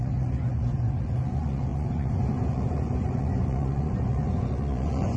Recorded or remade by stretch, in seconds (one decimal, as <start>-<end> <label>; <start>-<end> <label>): 0.0-5.2 remade